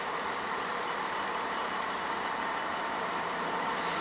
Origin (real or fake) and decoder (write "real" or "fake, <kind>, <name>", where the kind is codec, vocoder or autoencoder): fake, vocoder, BigVGAN v2